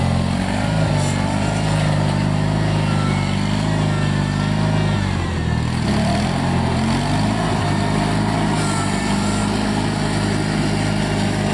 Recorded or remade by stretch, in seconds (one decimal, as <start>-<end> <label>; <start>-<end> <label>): 0.0-11.5 recorded